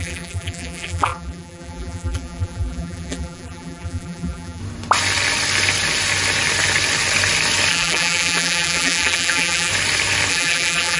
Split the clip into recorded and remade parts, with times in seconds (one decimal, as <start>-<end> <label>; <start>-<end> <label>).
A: 0.0-4.6 remade; 4.6-7.7 recorded; 7.7-9.7 remade; 9.7-10.3 recorded; 10.3-11.0 remade